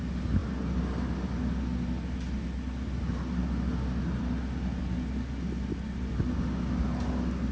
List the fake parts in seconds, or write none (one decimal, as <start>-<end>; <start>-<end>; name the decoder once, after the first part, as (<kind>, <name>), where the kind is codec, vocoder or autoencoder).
none